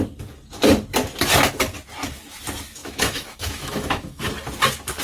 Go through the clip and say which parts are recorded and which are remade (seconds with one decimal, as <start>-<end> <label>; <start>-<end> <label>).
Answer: 0.0-2.8 recorded; 2.8-4.3 remade; 4.3-5.0 recorded